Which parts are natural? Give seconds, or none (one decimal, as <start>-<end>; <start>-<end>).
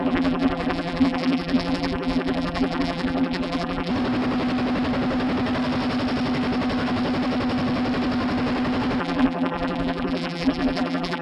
3.9-9.0